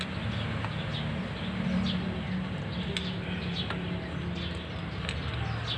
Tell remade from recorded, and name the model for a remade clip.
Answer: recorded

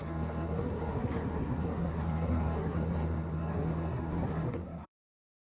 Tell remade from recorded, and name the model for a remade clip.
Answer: remade, codec, SNAC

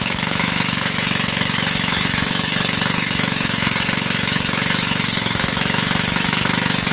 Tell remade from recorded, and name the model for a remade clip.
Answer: remade, autoencoder, DAC-VAE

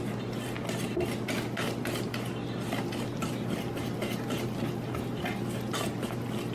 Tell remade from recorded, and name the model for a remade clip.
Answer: recorded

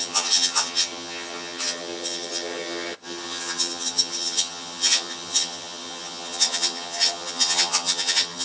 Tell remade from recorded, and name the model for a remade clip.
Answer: remade, vocoder, HiFi-GAN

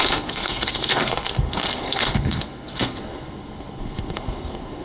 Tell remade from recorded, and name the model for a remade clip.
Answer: remade, codec, SNAC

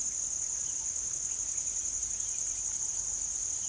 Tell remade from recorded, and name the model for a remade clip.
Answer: recorded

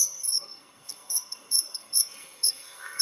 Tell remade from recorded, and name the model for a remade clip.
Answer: remade, codec, SNAC